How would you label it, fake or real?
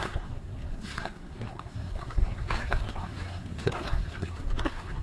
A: fake